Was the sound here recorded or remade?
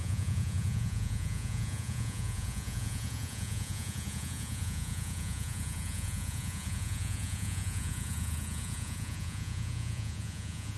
remade